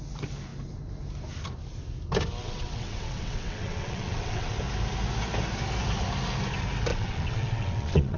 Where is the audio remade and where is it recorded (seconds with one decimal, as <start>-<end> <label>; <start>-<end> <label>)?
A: 0.0-2.4 recorded; 2.4-4.6 remade; 4.6-6.9 recorded; 6.9-8.2 remade